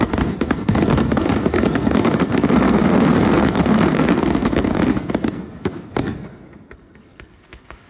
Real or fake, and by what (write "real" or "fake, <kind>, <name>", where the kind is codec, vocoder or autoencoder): fake, codec, SNAC